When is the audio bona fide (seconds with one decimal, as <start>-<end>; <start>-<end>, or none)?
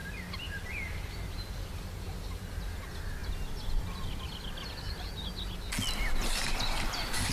0.0-7.3